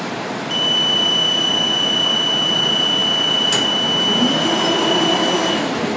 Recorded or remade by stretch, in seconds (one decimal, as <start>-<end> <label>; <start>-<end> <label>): 0.0-6.0 recorded